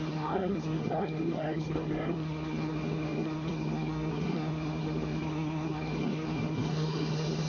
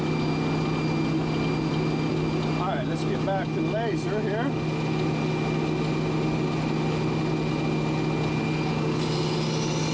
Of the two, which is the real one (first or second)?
second